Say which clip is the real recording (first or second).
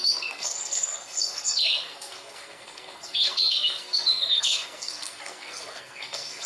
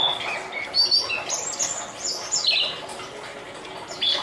second